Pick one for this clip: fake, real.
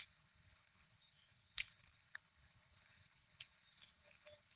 fake